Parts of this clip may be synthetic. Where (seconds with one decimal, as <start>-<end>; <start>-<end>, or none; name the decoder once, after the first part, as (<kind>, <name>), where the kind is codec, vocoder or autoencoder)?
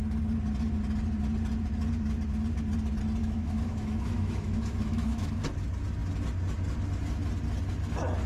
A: 3.2-5.3 (autoencoder, DAC-VAE)